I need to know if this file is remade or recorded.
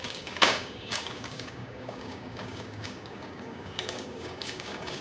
remade